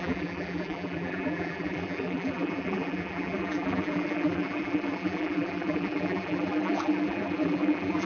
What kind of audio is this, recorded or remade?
remade